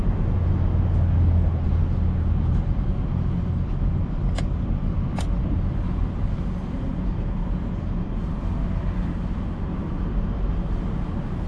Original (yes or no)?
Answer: yes